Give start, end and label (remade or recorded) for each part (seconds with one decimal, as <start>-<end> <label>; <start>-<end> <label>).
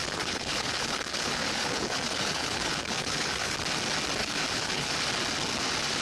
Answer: 0.0-3.6 remade; 3.6-4.2 recorded; 4.2-4.9 remade; 4.9-6.0 recorded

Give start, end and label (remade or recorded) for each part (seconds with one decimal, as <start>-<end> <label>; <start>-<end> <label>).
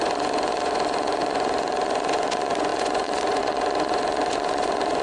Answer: 0.0-5.0 remade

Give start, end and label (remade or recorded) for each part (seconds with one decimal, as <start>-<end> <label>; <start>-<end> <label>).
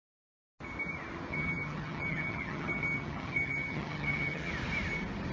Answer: 0.0-1.3 recorded; 1.3-4.5 remade; 4.5-5.3 recorded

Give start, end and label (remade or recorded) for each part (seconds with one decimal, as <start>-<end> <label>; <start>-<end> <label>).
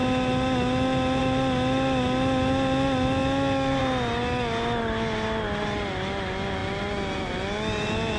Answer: 0.0-8.2 recorded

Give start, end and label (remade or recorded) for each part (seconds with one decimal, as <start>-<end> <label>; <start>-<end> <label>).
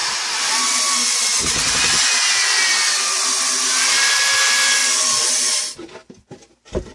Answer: 0.0-6.9 recorded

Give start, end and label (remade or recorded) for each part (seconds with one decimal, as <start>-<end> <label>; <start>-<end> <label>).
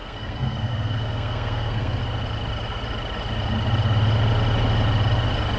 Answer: 0.0-2.0 remade; 2.0-5.6 recorded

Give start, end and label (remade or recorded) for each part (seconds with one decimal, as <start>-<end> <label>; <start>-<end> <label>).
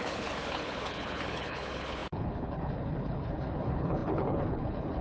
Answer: 0.0-5.0 remade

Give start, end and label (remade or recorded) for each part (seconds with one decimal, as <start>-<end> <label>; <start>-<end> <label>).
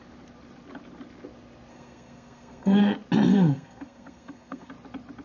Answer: 0.0-1.7 recorded; 1.7-2.8 remade; 2.8-3.3 recorded; 3.3-4.7 remade; 4.7-5.2 recorded